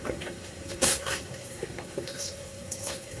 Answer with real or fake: fake